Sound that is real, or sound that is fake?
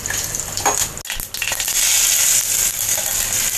real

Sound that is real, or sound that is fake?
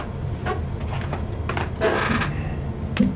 real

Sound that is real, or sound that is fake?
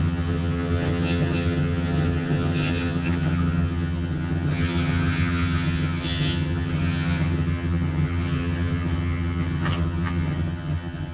fake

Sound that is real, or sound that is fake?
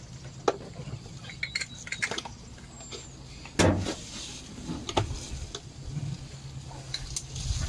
real